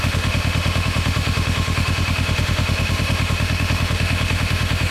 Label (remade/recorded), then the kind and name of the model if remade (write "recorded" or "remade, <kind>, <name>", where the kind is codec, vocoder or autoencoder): remade, autoencoder, DAC-VAE